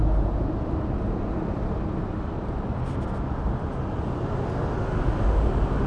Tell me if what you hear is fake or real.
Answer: real